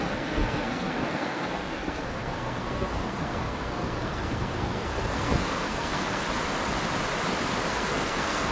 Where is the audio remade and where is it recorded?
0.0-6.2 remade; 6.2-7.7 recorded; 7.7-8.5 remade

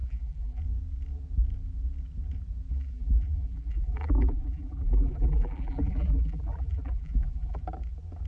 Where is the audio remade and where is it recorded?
0.0-0.6 remade; 0.6-2.7 recorded; 2.7-7.6 remade; 7.6-8.3 recorded

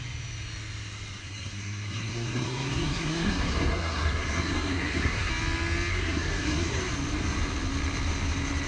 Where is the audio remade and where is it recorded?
0.0-1.2 recorded; 1.2-5.3 remade; 5.3-5.9 recorded; 5.9-6.8 remade; 6.8-8.7 recorded